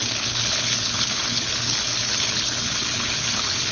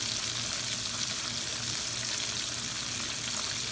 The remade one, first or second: first